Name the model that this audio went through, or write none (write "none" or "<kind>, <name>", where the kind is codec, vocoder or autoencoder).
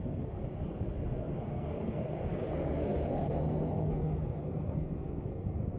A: codec, SNAC